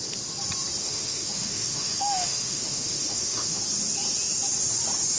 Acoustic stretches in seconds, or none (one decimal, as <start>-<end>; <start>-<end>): 0.0-0.8; 3.6-5.2